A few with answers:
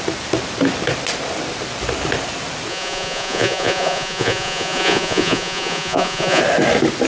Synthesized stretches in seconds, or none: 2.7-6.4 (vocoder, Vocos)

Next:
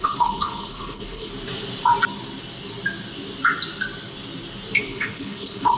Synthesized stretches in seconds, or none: 0.0-1.3 (codec, HILCodec); 4.8-5.8

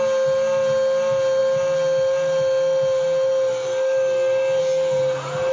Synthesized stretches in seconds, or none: none

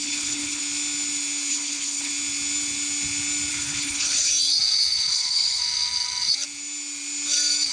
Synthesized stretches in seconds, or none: 0.0-0.6 (codec, HILCodec); 1.5-2.1; 3.5-4.3; 5.1-5.6